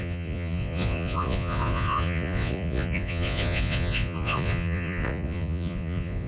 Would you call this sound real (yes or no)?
no